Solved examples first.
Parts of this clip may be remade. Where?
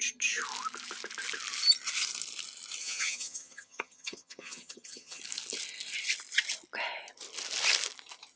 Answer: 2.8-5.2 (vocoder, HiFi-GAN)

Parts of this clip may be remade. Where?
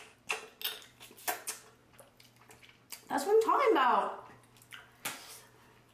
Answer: none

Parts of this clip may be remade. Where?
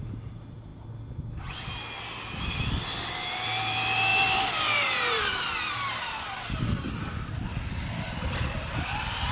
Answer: none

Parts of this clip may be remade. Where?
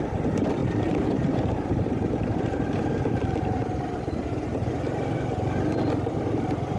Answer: 0.6-4.7 (vocoder, BigVGAN v2)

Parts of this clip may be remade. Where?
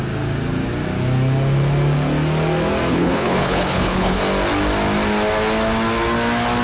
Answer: 2.9-4.2 (codec, HILCodec)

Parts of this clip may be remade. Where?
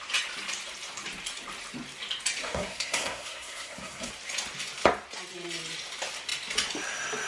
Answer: 2.4-4.1 (codec, SNAC)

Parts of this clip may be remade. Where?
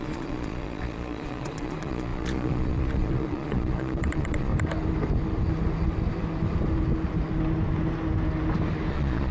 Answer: 0.0-4.5 (vocoder, Vocos); 8.9-9.3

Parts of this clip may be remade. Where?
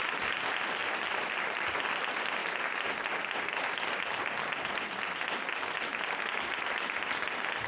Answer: 0.8-1.8 (vocoder, BigVGAN v2)